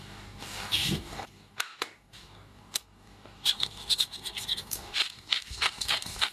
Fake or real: fake